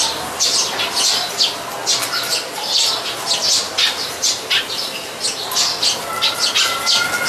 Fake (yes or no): no